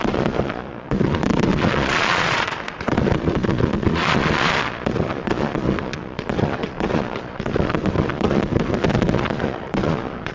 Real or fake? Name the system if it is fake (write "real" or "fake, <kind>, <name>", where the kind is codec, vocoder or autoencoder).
fake, vocoder, Vocos